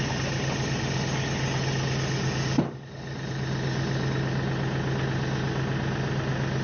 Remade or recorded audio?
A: recorded